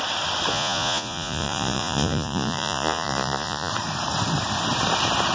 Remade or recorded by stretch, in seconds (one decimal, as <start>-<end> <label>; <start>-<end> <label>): 0.0-0.5 recorded; 0.5-3.7 remade; 3.7-5.3 recorded